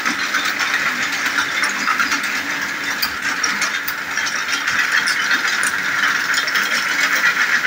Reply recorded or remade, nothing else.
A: recorded